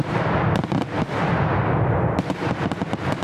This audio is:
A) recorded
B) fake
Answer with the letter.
A